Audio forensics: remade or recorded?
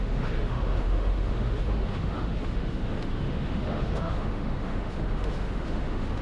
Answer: remade